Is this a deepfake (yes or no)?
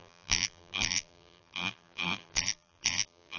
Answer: yes